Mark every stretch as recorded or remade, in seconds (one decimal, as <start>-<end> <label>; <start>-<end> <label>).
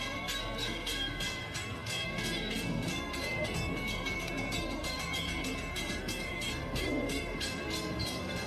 0.0-8.5 remade